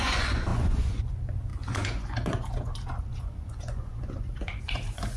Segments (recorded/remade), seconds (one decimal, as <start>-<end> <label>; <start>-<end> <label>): 0.0-5.2 remade

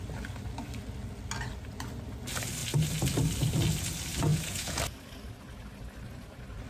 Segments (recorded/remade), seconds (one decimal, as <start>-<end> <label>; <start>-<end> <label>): 0.0-4.3 recorded; 4.3-4.8 remade; 4.8-6.7 recorded

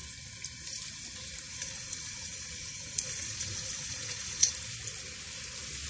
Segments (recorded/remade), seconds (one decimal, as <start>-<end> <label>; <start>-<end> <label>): 0.0-1.5 recorded; 1.5-4.5 remade; 4.5-5.9 recorded

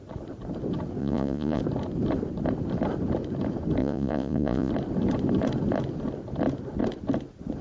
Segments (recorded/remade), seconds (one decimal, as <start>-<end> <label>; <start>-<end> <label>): 0.0-1.0 recorded; 1.0-1.6 remade; 1.6-3.8 recorded; 3.8-4.7 remade; 4.7-7.6 recorded

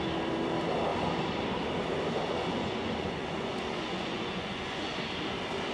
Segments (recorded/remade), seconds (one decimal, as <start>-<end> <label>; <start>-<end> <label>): 0.0-2.2 recorded; 2.2-4.9 remade; 4.9-5.7 recorded

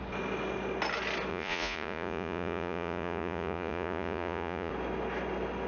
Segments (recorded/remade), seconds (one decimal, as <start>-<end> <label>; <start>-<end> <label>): 0.0-1.3 recorded; 1.3-4.7 remade; 4.7-5.7 recorded